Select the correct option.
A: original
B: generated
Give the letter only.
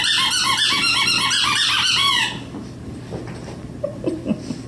A